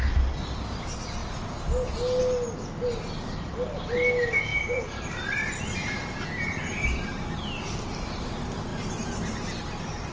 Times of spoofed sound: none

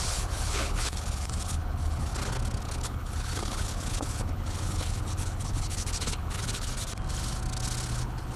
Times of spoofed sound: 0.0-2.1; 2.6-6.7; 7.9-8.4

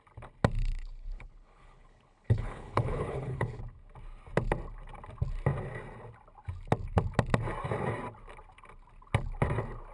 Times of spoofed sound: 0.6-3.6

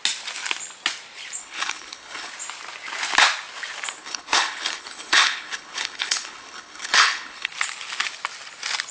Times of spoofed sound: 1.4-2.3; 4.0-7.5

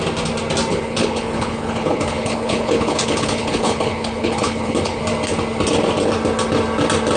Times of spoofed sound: 0.7-5.0